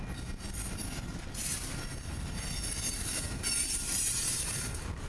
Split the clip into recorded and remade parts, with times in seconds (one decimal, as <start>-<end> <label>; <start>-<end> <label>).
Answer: 0.0-1.9 recorded; 1.9-5.1 remade